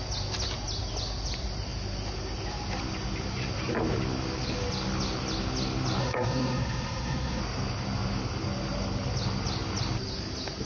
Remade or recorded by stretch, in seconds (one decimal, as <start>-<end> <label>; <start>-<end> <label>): 0.0-6.0 recorded; 6.0-7.4 remade; 7.4-10.7 recorded